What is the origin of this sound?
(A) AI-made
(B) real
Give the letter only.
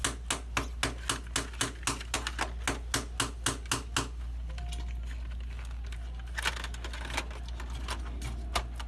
B